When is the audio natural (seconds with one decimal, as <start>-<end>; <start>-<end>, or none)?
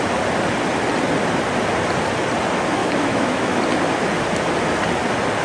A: 0.0-2.8; 3.6-5.4